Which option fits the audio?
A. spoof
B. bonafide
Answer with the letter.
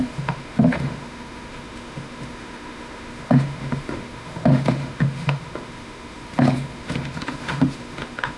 A